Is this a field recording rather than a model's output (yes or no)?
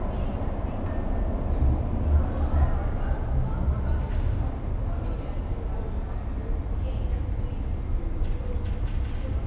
yes